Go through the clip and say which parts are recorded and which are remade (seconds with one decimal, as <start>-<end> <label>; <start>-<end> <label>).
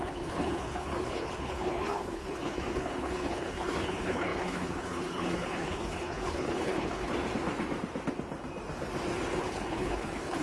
0.0-7.1 remade; 7.1-9.4 recorded; 9.4-10.4 remade